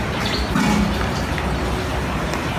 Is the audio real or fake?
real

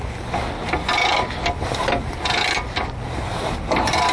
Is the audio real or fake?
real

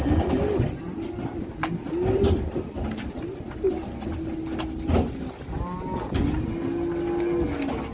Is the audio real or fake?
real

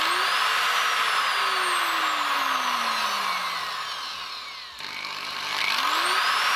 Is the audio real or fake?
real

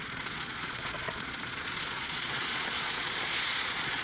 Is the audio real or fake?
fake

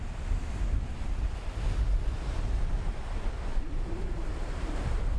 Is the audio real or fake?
real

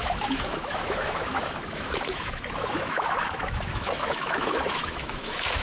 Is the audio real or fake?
fake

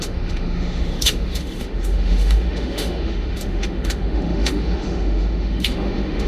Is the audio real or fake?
fake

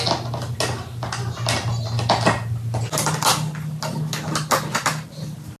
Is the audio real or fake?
real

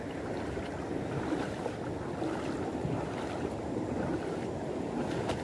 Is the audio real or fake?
real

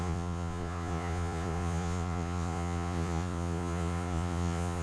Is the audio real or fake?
fake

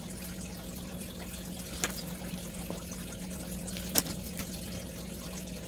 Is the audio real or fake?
real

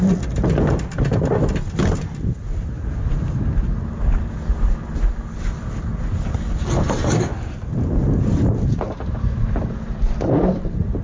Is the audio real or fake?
real